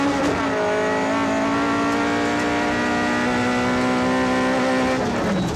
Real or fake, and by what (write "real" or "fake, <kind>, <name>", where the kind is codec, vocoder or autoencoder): real